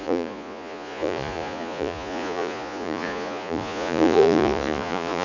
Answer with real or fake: fake